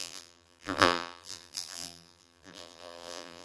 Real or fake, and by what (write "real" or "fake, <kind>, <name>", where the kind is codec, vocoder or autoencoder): fake, vocoder, BigVGAN v2